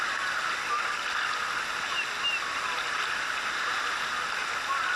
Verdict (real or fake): real